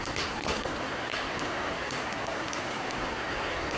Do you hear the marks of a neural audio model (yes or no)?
yes